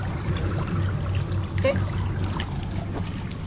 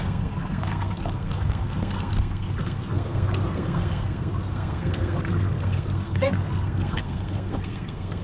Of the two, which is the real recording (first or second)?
first